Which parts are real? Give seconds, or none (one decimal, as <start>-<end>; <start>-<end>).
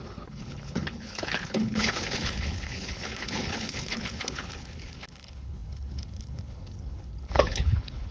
none